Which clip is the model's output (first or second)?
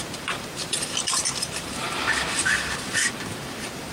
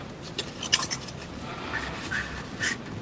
first